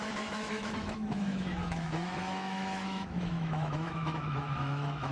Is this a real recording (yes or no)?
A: no